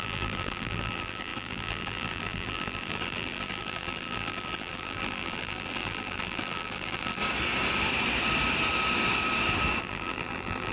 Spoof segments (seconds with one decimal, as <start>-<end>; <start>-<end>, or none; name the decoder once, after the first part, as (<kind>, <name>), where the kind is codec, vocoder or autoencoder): 0.0-7.2 (vocoder, BigVGAN v2); 9.8-10.7